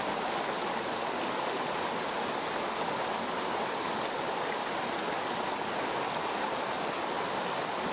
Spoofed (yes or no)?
no